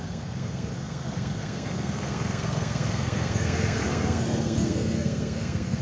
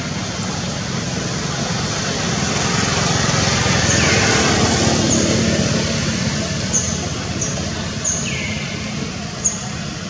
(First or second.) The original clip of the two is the second